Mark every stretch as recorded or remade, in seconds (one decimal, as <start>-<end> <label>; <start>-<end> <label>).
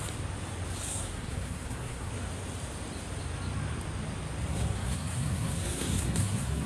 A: 0.0-0.9 recorded; 0.9-2.1 remade; 2.1-4.5 recorded; 4.5-6.7 remade